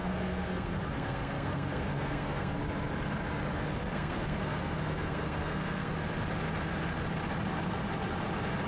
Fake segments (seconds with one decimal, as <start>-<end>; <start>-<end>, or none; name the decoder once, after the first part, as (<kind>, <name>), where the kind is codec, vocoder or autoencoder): 0.0-2.6 (codec, SNAC); 3.8-5.9